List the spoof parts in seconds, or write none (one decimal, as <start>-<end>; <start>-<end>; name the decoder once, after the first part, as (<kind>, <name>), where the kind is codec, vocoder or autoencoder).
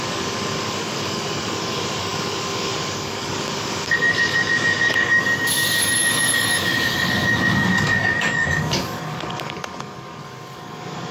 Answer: 0.0-11.1 (codec, DAC)